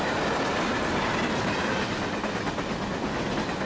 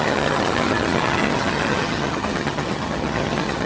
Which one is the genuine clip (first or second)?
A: first